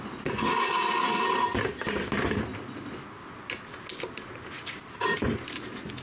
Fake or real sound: real